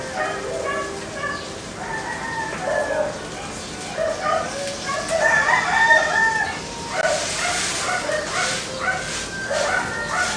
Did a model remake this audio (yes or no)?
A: no